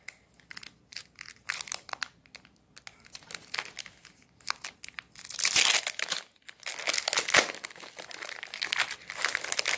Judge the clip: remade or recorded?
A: recorded